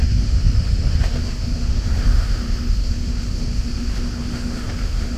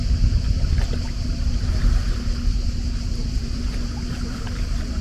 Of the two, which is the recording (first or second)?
second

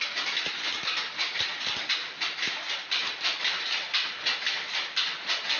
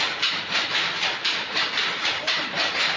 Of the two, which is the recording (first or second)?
first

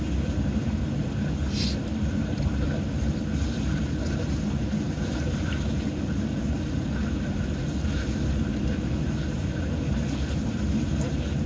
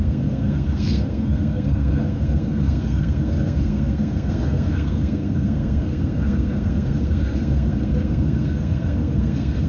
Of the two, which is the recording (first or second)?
first